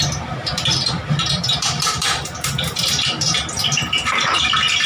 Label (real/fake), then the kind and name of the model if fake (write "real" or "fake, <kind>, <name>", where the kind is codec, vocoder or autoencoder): fake, vocoder, BigVGAN v2